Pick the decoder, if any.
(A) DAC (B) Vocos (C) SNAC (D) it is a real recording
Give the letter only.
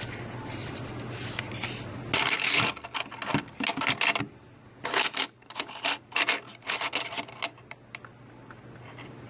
D